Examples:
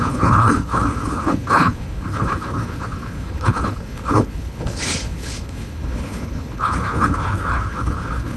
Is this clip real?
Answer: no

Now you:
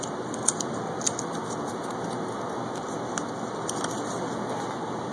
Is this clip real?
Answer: yes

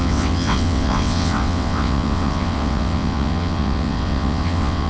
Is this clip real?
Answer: no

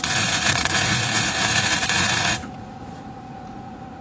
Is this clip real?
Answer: no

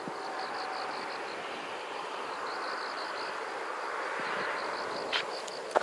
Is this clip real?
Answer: yes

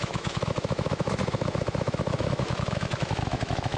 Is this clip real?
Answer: no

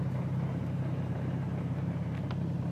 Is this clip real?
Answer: no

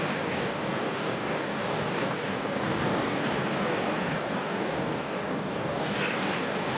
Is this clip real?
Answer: no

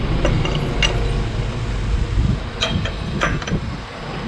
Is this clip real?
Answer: yes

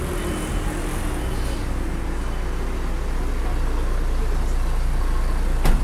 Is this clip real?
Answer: yes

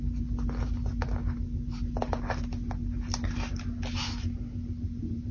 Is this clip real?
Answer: yes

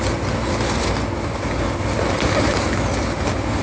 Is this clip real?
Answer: yes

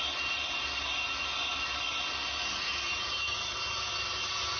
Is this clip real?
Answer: yes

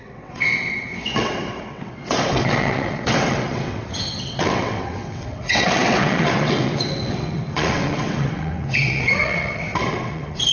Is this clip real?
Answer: no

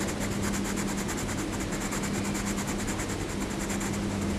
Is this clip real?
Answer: yes